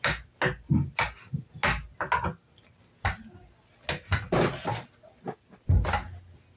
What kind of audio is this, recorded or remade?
recorded